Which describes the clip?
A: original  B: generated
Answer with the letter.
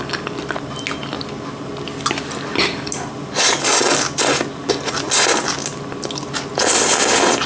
A